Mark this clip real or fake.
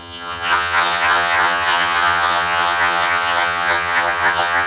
fake